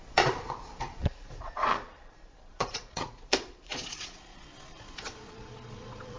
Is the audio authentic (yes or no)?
no